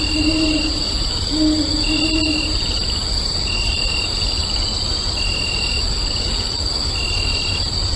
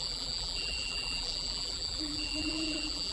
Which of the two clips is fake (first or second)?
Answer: second